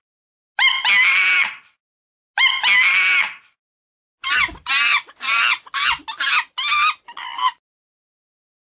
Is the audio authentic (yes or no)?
yes